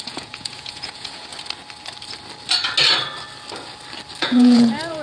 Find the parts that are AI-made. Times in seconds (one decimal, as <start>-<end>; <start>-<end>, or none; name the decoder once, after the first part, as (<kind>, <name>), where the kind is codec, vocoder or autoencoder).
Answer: 0.0-1.3 (vocoder, Vocos); 4.2-5.0